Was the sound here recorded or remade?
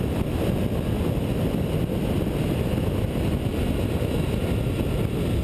recorded